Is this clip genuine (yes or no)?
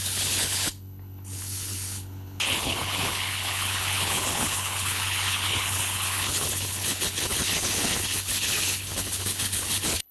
no